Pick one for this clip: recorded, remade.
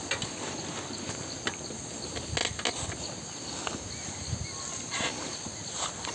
recorded